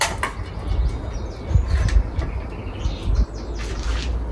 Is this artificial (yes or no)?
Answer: no